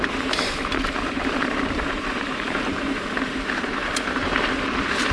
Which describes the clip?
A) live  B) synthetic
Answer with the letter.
B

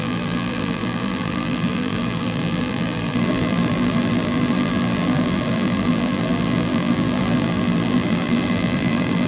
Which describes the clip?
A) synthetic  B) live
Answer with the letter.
A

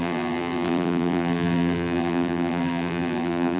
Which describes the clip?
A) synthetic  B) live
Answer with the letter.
A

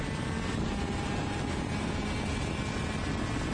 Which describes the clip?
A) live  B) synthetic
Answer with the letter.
A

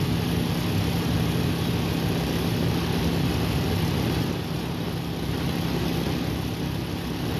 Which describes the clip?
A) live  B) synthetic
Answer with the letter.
A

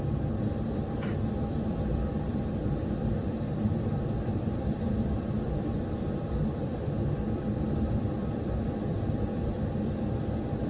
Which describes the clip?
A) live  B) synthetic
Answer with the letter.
B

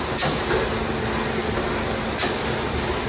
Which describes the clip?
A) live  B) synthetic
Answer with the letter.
A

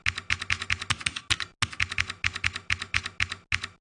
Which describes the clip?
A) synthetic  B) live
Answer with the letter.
B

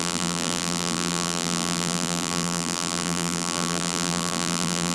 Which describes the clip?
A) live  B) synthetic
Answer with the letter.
B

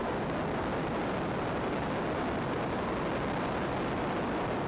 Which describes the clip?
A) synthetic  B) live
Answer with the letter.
B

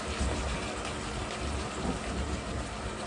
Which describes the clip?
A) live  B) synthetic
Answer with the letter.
A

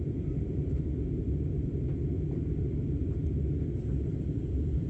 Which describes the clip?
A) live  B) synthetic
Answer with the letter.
B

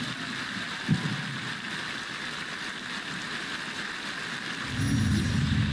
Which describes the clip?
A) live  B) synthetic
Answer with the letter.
A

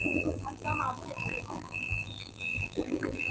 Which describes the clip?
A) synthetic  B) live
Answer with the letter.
A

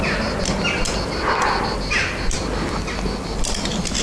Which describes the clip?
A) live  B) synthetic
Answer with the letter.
A